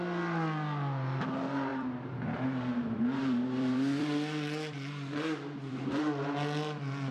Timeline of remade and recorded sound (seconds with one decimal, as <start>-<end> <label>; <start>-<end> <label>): 0.0-1.7 recorded; 1.7-6.0 remade; 6.0-7.1 recorded